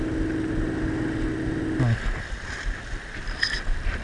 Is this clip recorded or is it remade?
recorded